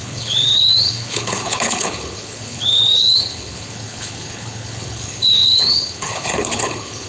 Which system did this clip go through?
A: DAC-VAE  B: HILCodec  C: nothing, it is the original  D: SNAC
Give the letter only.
B